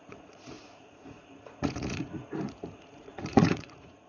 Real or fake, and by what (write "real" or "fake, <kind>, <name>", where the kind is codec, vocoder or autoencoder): fake, vocoder, Vocos